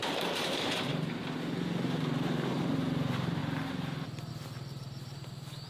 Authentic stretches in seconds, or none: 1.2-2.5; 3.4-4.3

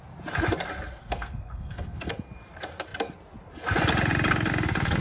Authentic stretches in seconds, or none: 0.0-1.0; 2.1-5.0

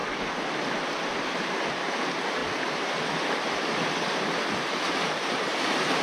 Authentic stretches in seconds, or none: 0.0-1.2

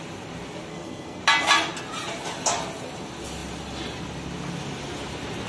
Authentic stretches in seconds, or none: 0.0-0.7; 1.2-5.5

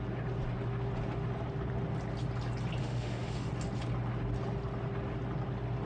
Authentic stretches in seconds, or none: 0.0-2.8; 3.5-5.9